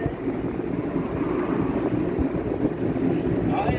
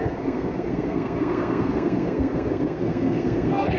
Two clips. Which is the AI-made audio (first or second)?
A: second